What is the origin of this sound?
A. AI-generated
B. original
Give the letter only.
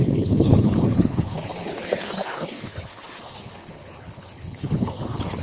A